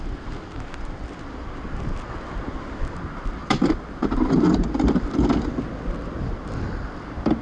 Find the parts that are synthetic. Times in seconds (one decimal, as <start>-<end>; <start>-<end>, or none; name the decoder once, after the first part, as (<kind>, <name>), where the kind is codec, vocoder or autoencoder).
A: none